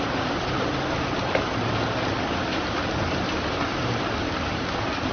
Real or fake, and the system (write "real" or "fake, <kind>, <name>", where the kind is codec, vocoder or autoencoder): fake, vocoder, BigVGAN v2